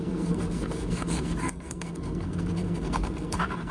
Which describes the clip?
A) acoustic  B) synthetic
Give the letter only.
B